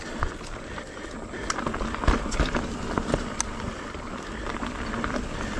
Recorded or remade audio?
recorded